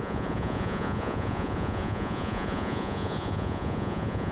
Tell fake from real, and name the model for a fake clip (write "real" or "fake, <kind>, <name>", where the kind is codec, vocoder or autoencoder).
fake, vocoder, Vocos